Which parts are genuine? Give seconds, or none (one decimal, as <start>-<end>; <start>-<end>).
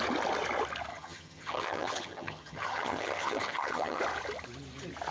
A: 0.0-0.9; 4.0-5.1